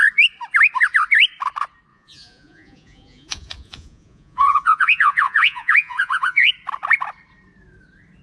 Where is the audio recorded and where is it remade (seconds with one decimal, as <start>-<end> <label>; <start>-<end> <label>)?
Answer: 0.0-1.9 recorded; 1.9-6.5 remade; 6.5-8.2 recorded